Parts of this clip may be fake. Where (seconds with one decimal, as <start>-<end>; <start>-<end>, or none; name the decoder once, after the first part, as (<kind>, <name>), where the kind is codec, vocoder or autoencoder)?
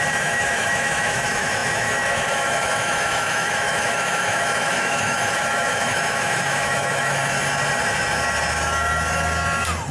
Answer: 0.0-7.2 (autoencoder, DAC-VAE)